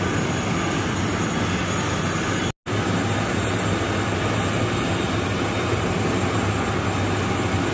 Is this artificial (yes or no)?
no